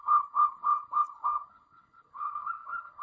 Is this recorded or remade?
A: remade